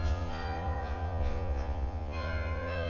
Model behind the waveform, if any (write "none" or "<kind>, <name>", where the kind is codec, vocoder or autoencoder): vocoder, Vocos